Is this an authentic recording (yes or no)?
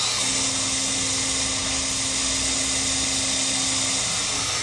yes